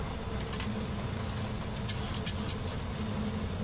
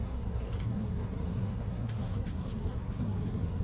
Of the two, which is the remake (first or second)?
second